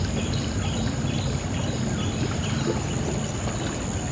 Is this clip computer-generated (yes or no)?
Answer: no